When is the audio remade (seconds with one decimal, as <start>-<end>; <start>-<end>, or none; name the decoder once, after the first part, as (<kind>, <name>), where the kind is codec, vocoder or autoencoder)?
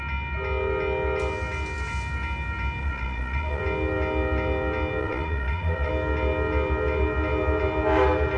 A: 2.8-3.6 (vocoder, Vocos); 5.0-5.9